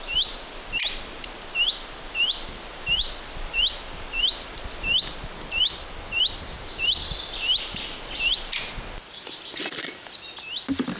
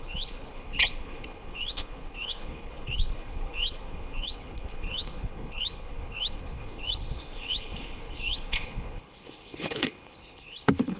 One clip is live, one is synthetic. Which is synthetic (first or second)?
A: second